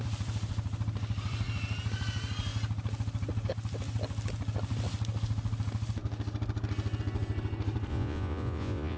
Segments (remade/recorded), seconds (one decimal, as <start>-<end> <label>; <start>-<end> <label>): 0.0-7.9 recorded; 7.9-9.0 remade